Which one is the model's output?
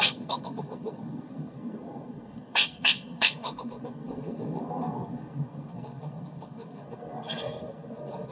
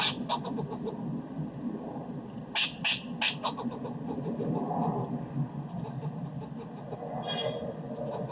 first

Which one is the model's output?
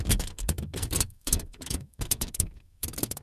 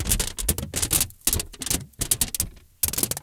first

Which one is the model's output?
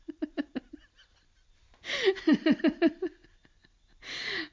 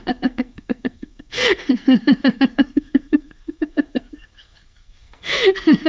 second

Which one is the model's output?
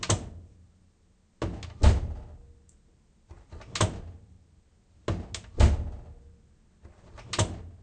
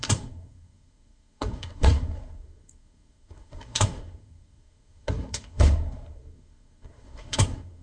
second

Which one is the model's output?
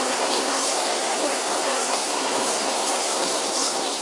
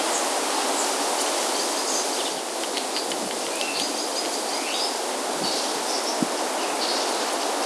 first